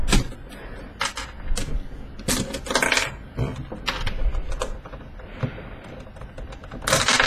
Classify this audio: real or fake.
real